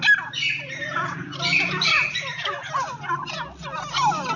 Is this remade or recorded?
recorded